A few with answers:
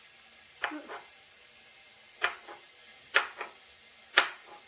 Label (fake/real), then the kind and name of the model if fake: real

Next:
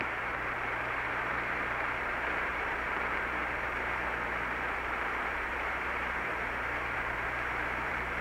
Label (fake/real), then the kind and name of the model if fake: fake, vocoder, BigVGAN v2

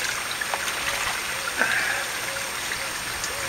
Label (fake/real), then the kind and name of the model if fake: real